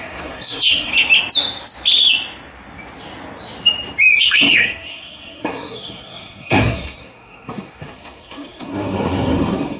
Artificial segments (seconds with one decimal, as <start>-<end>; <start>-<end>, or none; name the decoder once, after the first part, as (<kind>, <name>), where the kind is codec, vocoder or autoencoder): 0.0-0.9 (codec, SNAC); 4.2-9.8

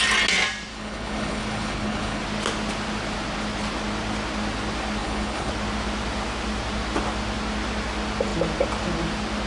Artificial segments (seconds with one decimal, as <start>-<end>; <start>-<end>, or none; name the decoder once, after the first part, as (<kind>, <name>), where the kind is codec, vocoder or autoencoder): 0.7-2.2 (codec, HILCodec); 5.0-5.5

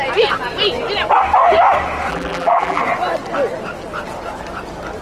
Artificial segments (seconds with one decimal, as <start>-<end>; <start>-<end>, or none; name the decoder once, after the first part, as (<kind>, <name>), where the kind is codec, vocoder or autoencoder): 2.1-2.8 (vocoder, BigVGAN v2)

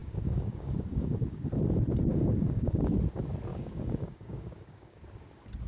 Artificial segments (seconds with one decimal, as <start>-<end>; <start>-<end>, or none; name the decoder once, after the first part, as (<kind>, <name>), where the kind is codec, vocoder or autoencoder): 0.0-1.4 (codec, DAC); 2.1-2.9; 3.5-5.0

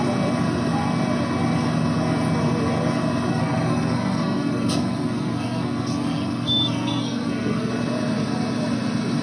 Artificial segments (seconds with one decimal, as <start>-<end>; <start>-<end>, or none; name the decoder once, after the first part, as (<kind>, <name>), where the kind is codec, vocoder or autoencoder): 3.3-7.7 (codec, SNAC)

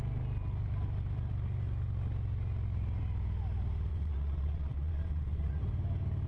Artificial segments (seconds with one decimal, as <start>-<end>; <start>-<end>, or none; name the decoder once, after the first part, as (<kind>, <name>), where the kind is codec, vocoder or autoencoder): 3.9-5.6 (vocoder, WaveNeXt)

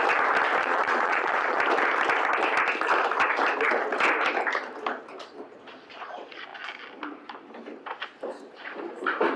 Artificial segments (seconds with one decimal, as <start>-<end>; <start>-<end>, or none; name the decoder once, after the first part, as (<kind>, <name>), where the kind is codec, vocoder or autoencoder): 0.6-1.6 (vocoder, Vocos)